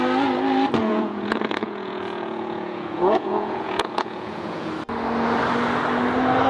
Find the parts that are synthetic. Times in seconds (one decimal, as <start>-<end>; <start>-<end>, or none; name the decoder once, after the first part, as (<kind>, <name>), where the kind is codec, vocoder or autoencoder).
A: 0.8-4.7 (vocoder, Vocos)